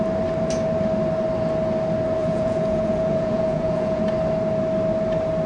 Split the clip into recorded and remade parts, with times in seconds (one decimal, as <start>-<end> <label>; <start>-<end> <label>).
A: 0.0-2.2 recorded; 2.2-4.0 remade; 4.0-5.5 recorded